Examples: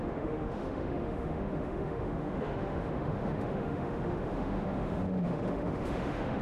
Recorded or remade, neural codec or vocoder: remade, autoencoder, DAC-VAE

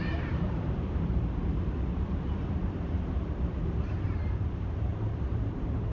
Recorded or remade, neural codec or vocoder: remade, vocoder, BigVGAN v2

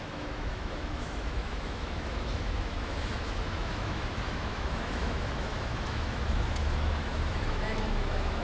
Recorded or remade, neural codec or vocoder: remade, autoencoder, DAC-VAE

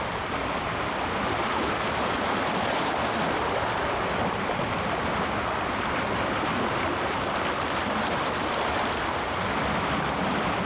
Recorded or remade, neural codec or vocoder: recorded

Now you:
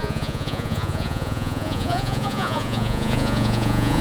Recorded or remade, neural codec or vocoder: remade, vocoder, Vocos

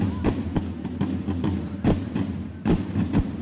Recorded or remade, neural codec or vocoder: recorded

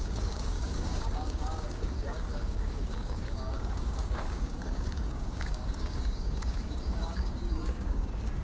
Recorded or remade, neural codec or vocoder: remade, codec, DAC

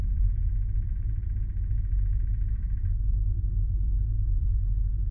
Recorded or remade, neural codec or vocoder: remade, vocoder, BigVGAN v2